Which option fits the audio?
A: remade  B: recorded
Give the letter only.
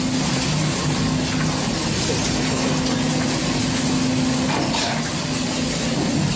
B